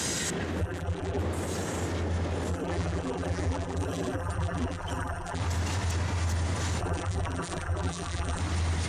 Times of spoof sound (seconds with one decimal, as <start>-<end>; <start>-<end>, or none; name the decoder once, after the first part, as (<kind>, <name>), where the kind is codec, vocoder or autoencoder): 0.6-1.2 (vocoder, BigVGAN v2); 2.5-5.4; 6.8-8.4